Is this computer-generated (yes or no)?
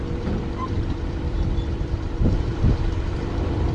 yes